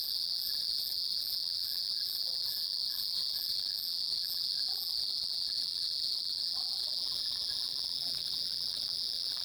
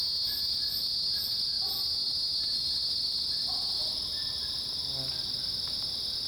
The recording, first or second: second